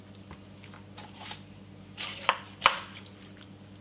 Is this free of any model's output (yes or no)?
yes